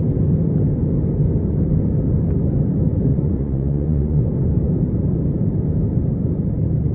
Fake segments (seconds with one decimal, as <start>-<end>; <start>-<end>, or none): 3.1-4.2